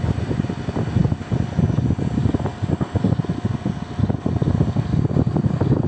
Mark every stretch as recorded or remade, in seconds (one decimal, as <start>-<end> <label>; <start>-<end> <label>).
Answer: 0.0-5.9 recorded